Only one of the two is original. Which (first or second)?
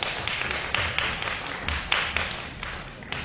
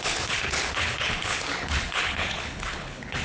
first